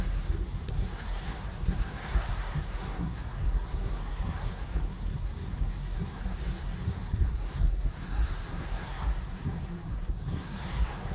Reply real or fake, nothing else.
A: fake